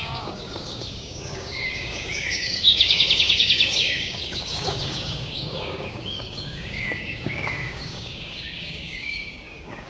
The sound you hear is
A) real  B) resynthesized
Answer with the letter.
B